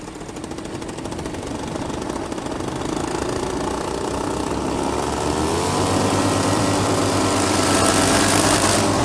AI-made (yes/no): no